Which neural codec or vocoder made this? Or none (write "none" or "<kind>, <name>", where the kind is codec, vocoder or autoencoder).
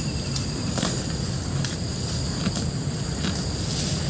none